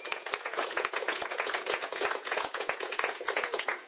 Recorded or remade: remade